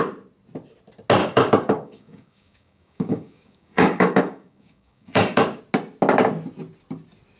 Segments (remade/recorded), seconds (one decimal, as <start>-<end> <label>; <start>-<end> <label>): 0.0-1.2 recorded; 1.2-5.6 remade; 5.6-7.4 recorded